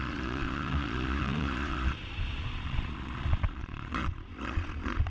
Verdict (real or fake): fake